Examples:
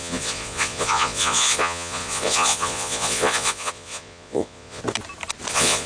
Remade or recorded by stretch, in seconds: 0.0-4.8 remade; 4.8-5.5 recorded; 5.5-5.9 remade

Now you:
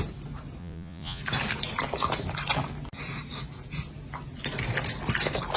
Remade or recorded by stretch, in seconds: 0.0-0.6 recorded; 0.6-1.2 remade; 1.2-5.6 recorded

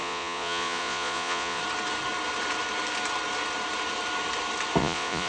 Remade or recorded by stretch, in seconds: 0.0-1.6 remade; 1.6-4.8 recorded; 4.8-5.3 remade

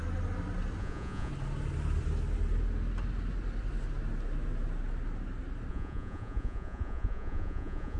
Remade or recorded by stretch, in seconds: 0.0-0.8 recorded; 0.8-1.3 remade; 1.3-5.7 recorded; 5.7-8.0 remade